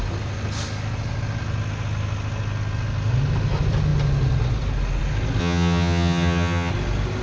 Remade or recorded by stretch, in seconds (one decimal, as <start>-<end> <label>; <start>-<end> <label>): 0.0-5.4 recorded; 5.4-6.7 remade; 6.7-7.2 recorded